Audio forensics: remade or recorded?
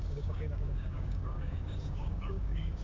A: remade